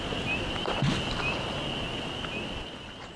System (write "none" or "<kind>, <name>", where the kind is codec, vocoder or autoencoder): none